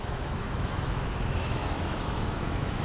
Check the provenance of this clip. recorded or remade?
remade